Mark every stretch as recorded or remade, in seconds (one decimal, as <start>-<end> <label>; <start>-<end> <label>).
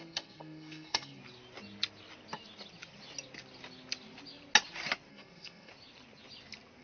0.0-1.2 remade; 1.2-5.1 recorded; 5.1-5.7 remade; 5.7-6.8 recorded